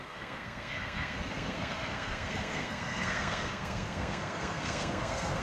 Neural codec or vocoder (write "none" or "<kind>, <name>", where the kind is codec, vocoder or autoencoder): codec, SNAC